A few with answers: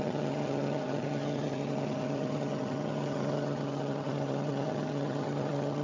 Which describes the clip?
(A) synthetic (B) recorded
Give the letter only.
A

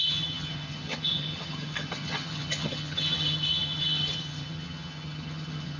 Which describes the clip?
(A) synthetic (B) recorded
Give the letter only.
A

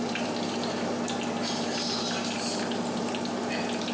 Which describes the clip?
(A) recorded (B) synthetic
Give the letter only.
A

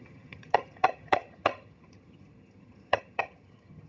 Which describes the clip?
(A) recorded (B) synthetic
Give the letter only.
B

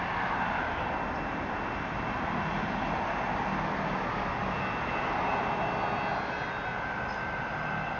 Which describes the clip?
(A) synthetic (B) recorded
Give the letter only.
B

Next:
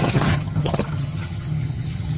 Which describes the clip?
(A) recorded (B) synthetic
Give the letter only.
B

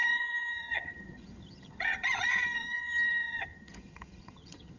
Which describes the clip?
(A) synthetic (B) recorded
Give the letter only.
A